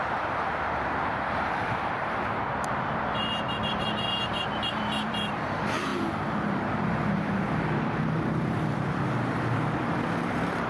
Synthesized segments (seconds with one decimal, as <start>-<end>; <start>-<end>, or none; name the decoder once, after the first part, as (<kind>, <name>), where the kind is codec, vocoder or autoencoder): 0.0-10.7 (vocoder, BigVGAN v2)